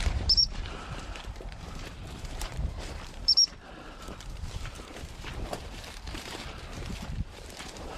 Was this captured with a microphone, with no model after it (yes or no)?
no